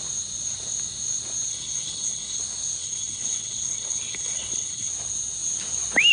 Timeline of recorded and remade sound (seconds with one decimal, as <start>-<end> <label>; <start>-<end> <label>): 0.0-1.5 recorded; 1.5-2.4 remade; 2.4-2.8 recorded; 2.8-4.9 remade; 4.9-6.1 recorded